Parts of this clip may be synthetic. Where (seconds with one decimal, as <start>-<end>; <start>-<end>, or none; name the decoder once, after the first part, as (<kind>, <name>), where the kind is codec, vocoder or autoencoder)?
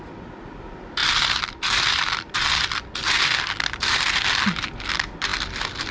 none